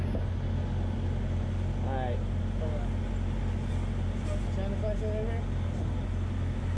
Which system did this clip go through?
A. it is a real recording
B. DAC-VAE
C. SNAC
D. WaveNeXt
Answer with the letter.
A